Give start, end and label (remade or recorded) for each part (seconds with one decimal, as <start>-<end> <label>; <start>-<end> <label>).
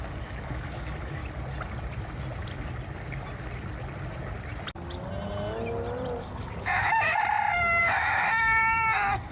0.0-1.2 remade; 1.2-6.2 recorded; 6.2-7.2 remade; 7.2-7.8 recorded; 7.8-9.3 remade